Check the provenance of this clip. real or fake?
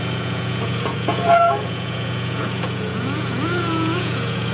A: fake